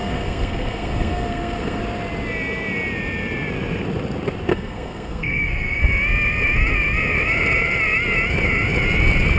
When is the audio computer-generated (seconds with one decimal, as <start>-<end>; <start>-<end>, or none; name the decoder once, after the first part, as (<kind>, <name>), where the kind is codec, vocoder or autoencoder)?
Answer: 0.0-1.8 (codec, SNAC); 4.5-5.8